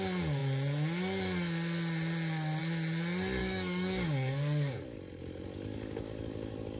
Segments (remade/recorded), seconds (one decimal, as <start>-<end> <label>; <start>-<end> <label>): 0.0-3.4 recorded; 3.4-5.0 remade; 5.0-5.5 recorded; 5.5-6.8 remade